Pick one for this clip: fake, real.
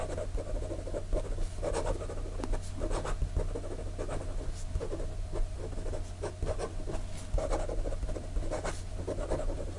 real